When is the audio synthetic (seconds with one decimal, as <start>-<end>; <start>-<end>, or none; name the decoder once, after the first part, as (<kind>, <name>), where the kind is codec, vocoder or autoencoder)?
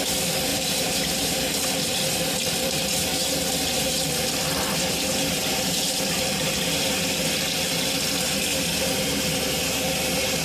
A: 0.5-1.0 (vocoder, BigVGAN v2); 8.5-9.2